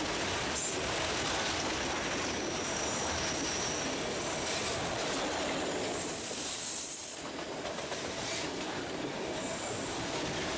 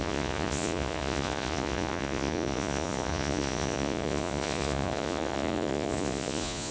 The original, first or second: first